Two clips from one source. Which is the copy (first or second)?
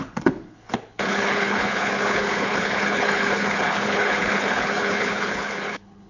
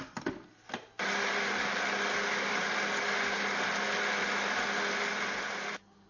first